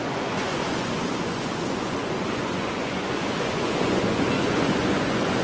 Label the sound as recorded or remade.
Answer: remade